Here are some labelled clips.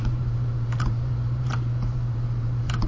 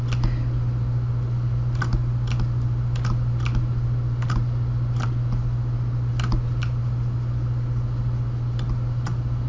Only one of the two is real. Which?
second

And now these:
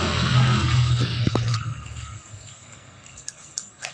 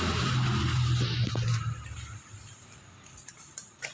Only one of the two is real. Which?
second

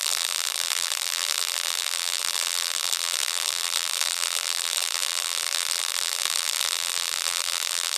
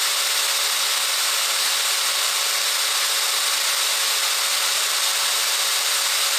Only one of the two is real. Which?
second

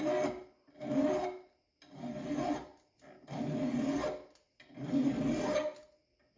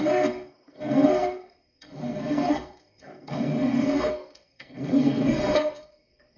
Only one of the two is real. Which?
first